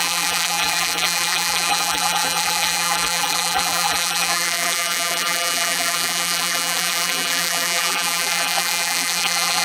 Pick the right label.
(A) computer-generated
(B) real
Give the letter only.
A